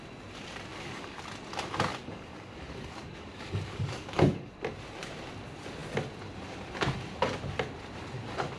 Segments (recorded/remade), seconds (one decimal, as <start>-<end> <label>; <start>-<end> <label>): 0.0-0.7 recorded; 0.7-1.2 remade; 1.2-1.9 recorded; 1.9-4.5 remade; 4.5-8.6 recorded